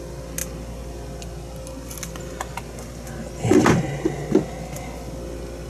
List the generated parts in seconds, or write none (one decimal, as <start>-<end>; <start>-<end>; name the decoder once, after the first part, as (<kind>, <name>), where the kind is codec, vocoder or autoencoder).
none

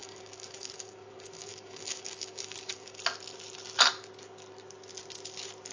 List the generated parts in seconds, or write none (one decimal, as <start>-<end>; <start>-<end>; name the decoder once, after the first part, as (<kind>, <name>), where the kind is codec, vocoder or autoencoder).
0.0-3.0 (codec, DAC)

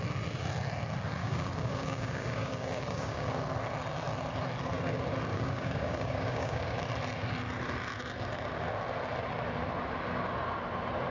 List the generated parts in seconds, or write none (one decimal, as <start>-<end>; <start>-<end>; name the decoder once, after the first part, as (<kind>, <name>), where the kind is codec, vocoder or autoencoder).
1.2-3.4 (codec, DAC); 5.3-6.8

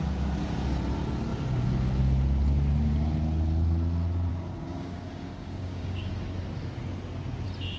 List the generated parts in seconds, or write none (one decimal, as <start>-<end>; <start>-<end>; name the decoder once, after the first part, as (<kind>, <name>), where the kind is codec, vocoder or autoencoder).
4.3-6.1 (codec, DAC)

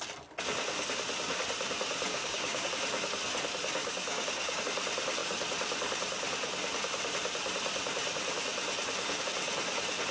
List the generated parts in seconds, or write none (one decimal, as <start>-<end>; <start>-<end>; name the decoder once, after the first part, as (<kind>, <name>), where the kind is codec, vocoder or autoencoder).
2.1-2.7 (codec, DAC); 3.8-4.6